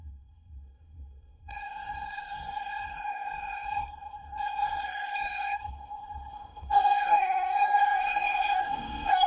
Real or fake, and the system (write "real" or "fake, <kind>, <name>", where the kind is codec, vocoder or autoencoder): fake, codec, SNAC